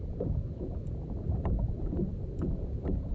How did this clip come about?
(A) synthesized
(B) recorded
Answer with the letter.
B